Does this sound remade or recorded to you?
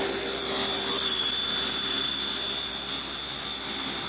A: recorded